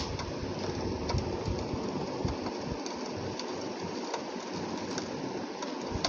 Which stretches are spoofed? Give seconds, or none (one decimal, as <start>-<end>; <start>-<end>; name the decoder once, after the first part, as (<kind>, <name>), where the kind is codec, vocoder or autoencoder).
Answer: none